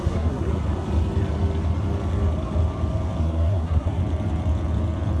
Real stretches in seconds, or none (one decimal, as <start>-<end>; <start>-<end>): 0.5-3.2; 4.0-5.2